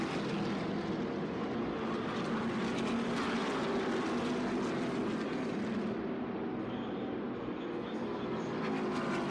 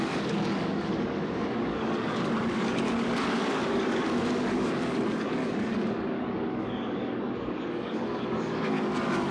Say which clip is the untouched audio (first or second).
first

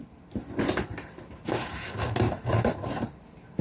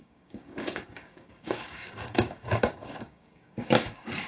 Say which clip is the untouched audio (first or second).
first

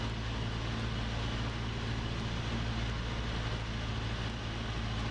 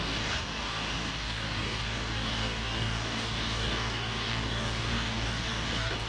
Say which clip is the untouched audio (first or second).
first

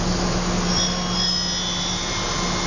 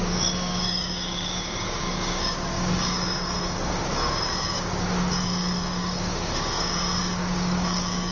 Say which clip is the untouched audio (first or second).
first